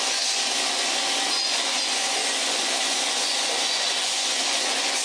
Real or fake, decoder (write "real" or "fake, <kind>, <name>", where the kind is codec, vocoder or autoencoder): fake, vocoder, Vocos